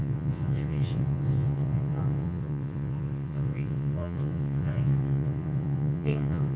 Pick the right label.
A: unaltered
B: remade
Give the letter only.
B